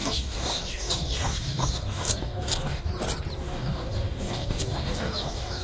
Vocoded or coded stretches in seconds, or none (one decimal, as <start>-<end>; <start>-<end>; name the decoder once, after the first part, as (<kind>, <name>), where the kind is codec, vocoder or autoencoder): 0.0-2.9 (codec, DAC); 3.4-5.6